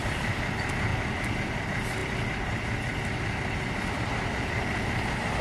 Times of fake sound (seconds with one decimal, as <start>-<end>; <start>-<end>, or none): none